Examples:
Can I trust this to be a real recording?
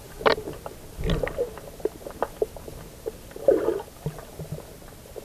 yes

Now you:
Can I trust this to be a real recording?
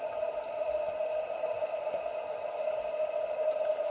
yes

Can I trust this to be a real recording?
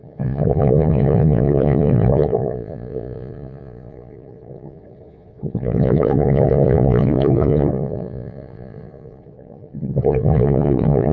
no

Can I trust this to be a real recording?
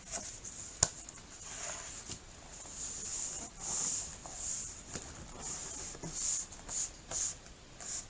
yes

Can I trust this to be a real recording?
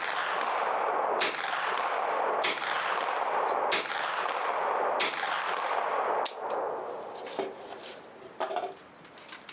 yes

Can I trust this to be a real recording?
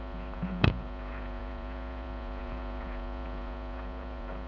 no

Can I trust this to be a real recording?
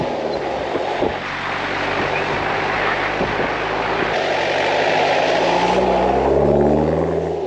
yes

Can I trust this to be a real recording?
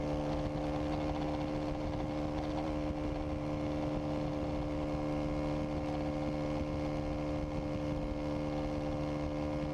yes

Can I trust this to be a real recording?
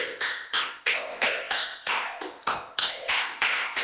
no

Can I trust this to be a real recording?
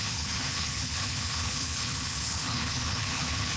no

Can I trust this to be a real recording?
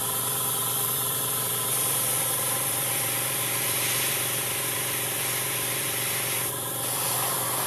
no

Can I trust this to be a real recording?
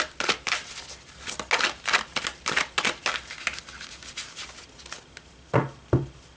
yes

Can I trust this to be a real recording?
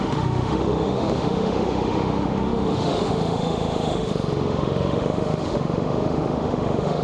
no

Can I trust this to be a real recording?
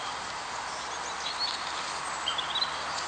yes